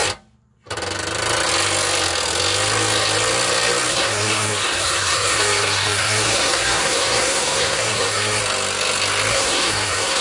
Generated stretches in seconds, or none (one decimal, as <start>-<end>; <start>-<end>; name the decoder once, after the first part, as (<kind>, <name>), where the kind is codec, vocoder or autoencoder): 3.9-8.4 (codec, SNAC); 9.3-10.2